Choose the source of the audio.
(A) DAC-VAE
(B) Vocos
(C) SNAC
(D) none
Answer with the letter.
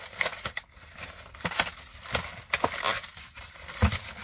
D